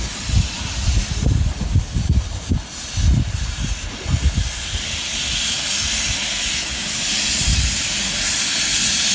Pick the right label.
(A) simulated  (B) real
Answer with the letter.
B